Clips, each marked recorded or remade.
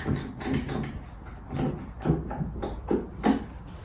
recorded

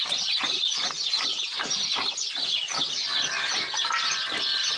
recorded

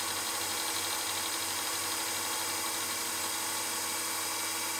recorded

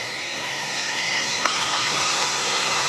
remade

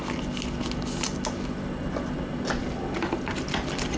recorded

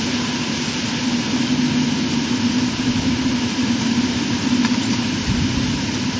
recorded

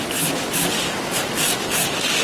recorded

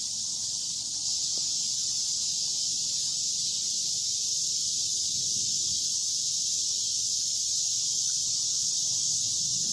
recorded